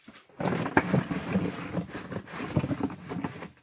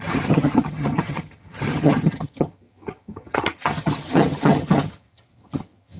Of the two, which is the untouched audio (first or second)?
first